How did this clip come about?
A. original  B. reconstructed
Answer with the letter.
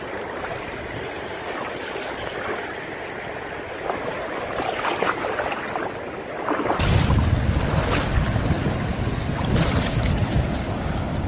A